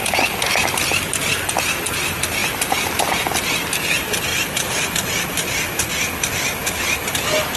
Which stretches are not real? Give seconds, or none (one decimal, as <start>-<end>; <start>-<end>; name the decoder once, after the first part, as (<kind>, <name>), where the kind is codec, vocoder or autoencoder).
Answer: 4.3-4.9 (vocoder, BigVGAN v2)